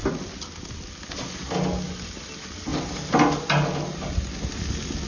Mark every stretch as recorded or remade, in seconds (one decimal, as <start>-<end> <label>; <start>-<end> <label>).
0.0-5.1 recorded